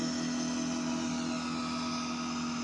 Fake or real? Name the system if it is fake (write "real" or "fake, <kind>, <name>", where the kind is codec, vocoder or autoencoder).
real